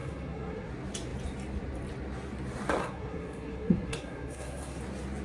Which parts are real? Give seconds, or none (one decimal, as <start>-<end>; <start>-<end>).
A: 0.7-2.8; 4.8-5.2